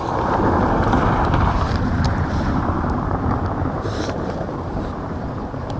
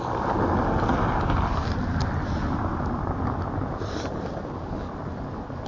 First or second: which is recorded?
second